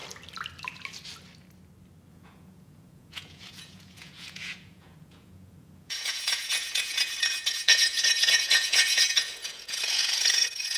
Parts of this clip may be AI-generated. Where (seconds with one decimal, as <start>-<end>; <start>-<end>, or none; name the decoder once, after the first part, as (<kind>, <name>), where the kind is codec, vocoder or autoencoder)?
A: 2.1-10.8 (vocoder, Vocos)